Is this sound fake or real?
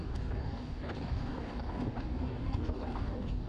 fake